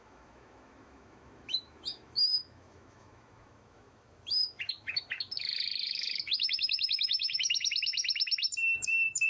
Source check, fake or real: fake